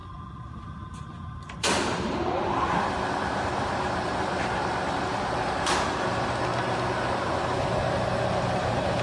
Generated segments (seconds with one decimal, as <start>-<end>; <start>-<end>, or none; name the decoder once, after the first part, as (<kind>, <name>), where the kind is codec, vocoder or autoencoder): 0.0-6.5 (vocoder, BigVGAN v2); 8.3-9.0